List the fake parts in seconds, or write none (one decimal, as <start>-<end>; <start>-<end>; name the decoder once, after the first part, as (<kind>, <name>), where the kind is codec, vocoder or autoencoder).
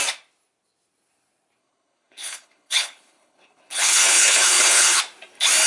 1.6-5.0 (codec, HILCodec)